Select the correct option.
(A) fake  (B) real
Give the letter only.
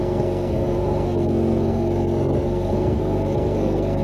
A